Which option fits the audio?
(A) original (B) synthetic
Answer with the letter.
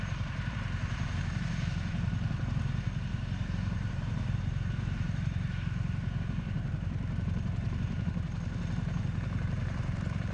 B